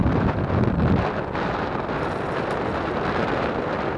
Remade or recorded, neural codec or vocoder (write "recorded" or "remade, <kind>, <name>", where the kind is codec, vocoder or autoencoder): recorded